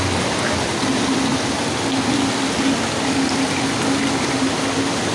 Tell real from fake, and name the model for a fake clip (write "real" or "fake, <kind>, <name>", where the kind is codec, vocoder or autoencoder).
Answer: real